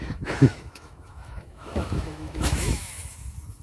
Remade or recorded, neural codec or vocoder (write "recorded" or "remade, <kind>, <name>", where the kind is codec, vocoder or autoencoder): remade, autoencoder, DAC-VAE